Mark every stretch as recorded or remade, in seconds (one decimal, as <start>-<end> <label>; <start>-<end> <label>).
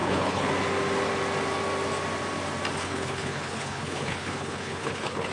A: 0.0-0.5 remade; 0.5-2.8 recorded; 2.8-5.3 remade